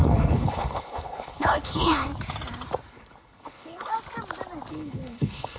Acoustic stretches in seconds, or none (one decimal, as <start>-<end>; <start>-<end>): 2.1-2.9; 3.9-4.7